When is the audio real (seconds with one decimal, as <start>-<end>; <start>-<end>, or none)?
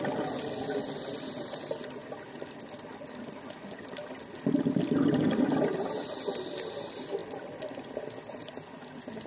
0.0-9.3